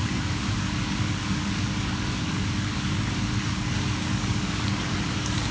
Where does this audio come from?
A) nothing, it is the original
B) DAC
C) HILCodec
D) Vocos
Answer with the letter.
B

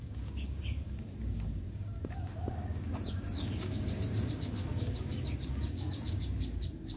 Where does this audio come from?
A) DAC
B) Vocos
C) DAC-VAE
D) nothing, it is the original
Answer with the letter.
A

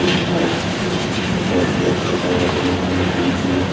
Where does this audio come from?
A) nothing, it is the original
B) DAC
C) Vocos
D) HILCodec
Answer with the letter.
A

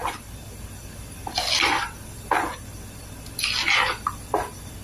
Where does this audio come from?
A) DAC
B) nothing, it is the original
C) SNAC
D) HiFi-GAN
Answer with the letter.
B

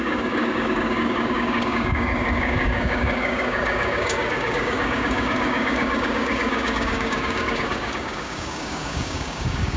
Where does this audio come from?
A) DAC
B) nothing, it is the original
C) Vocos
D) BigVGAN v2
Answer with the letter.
A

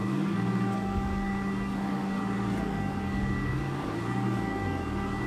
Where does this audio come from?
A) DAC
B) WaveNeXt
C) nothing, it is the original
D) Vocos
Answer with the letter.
A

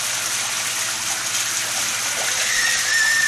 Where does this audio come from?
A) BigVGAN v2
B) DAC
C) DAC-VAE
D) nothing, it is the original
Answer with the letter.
D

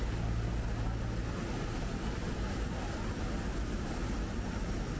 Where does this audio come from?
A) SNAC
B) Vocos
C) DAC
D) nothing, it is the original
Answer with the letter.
D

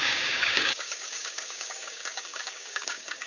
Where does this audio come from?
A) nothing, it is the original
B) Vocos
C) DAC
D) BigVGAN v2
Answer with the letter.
C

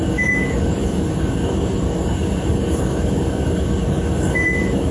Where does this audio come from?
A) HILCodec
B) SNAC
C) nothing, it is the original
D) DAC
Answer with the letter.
D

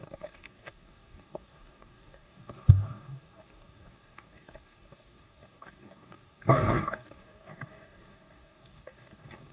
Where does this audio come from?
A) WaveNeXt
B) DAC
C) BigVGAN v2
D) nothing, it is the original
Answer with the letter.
B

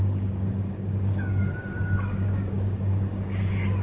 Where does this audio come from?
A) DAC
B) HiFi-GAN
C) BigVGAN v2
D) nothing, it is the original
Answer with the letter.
A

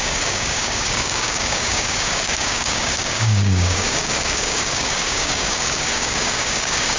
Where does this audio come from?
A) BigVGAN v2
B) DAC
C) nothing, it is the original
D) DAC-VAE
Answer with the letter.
B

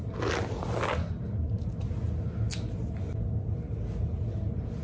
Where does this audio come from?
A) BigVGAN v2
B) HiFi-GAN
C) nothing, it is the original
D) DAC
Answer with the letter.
C